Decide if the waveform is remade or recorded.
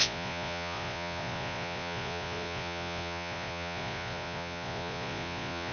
remade